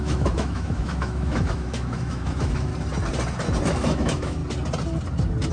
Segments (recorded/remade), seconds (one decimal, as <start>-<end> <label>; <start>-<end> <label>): 0.0-2.7 remade; 2.7-3.7 recorded; 3.7-4.4 remade; 4.4-5.5 recorded